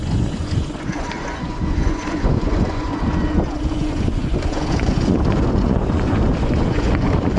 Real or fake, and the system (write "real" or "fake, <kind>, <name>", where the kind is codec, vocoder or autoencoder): fake, vocoder, Vocos